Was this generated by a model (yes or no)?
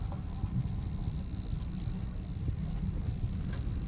no